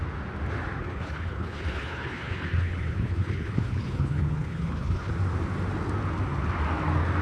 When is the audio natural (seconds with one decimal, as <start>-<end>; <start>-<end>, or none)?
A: 0.0-0.8; 5.1-7.2